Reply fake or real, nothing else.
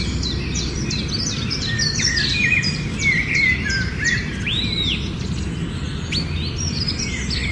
real